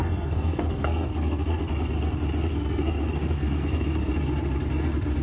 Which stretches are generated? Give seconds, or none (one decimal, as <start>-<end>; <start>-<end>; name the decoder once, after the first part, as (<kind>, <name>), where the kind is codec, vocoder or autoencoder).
0.0-1.7 (codec, SNAC); 2.5-4.1